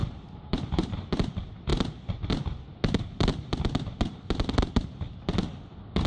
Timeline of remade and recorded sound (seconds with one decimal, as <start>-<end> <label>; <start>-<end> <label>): 0.0-1.0 remade; 1.0-6.1 recorded